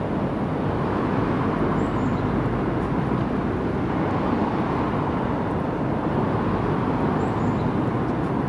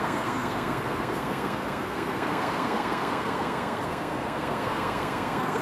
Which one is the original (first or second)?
first